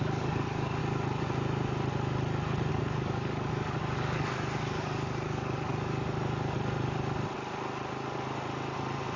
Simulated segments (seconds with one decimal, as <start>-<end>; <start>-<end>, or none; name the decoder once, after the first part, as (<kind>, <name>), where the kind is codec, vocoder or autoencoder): 0.0-0.8 (codec, DAC); 2.7-5.7